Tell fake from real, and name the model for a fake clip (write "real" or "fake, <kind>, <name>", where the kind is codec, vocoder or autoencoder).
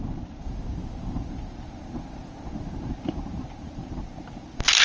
fake, vocoder, BigVGAN v2